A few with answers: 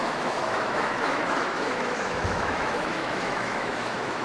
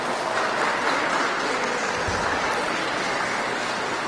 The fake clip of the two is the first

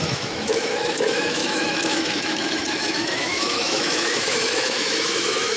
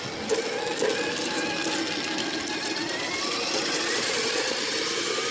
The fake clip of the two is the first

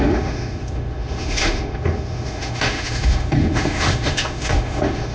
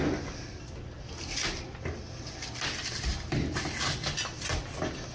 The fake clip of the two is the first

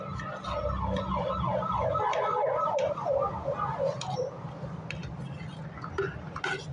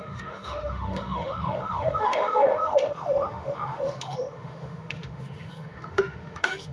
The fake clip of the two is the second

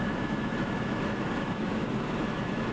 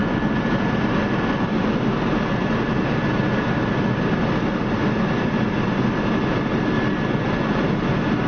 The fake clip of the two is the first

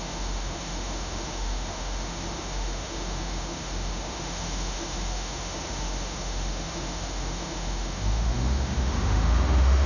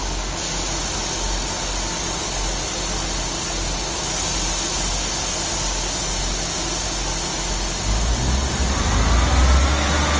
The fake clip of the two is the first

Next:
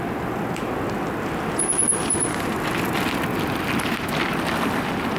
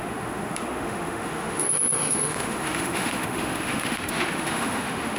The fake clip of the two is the second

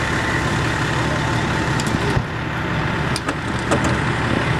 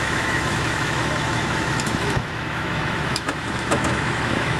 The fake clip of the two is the second